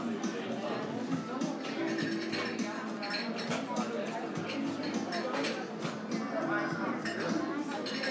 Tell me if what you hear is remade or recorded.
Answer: recorded